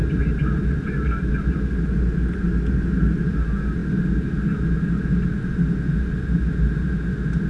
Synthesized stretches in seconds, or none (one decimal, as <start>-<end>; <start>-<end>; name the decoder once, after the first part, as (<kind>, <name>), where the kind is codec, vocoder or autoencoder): none